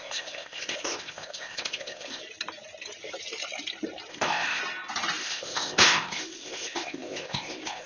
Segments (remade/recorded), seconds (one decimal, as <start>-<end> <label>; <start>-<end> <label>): 0.0-2.2 remade; 2.2-4.1 recorded; 4.1-4.6 remade; 4.6-5.2 recorded; 5.2-7.9 remade